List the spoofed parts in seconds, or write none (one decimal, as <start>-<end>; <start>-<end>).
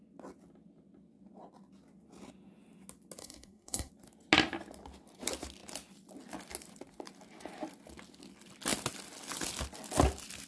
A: 3.2-3.9